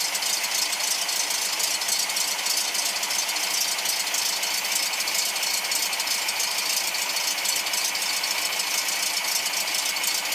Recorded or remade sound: recorded